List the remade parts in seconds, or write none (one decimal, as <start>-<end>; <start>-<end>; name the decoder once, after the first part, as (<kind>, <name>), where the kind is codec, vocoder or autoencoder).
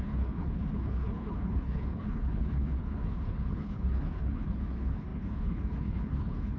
0.0-6.6 (codec, HILCodec)